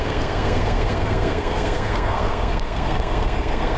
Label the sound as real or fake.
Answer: fake